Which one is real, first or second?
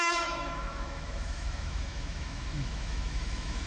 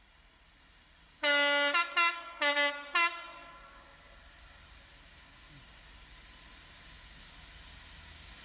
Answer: second